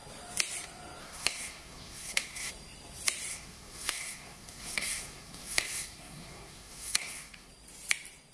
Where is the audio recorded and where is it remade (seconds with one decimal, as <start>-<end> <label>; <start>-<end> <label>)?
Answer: 0.0-1.0 recorded; 1.0-2.5 remade; 2.5-3.3 recorded; 3.3-7.5 remade; 7.5-8.3 recorded